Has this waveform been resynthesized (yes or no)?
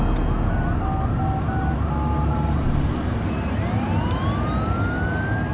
no